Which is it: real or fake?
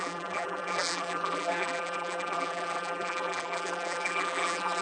fake